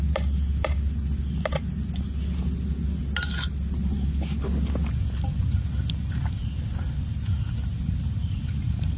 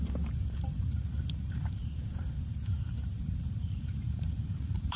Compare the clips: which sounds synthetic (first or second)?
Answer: second